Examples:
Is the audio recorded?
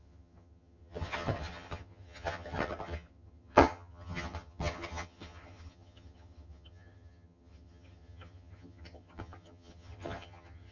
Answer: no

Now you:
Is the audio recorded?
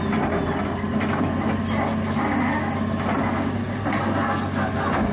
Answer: yes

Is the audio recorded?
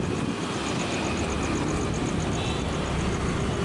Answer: yes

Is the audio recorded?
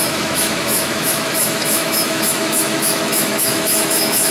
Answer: no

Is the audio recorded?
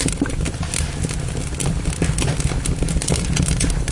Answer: yes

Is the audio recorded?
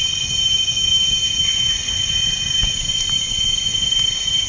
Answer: yes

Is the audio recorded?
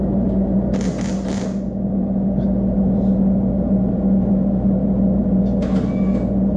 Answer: yes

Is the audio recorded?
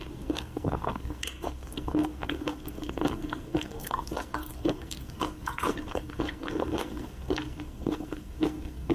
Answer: no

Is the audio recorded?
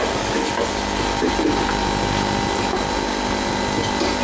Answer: yes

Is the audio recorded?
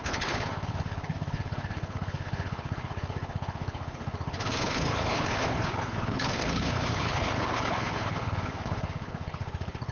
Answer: no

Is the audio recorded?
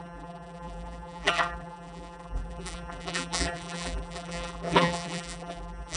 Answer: no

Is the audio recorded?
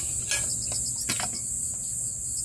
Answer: yes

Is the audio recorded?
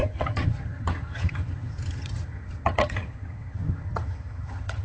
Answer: no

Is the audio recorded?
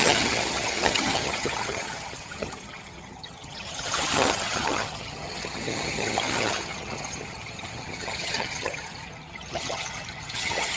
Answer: no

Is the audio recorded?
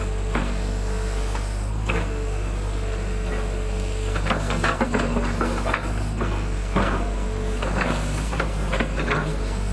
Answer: no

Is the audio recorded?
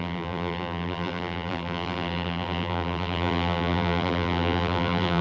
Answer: no